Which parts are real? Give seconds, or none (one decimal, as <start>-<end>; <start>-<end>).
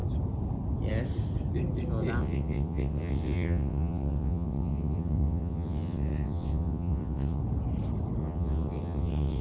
0.0-2.2; 7.4-8.2